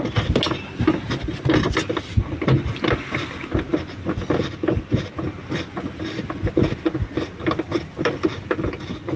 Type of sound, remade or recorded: recorded